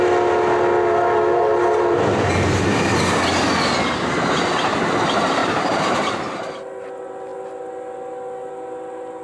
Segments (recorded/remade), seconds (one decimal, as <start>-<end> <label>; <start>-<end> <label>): 0.0-5.4 recorded; 5.4-6.1 remade; 6.1-9.2 recorded